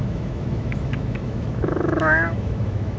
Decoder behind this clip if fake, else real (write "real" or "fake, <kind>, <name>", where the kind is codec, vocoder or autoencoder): fake, autoencoder, DAC-VAE